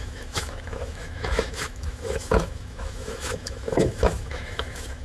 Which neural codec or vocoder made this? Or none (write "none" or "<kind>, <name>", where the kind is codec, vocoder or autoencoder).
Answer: autoencoder, DAC-VAE